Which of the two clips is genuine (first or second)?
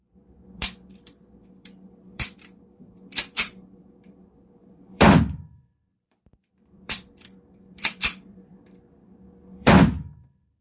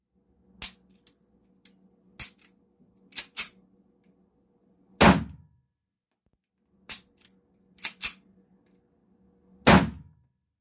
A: second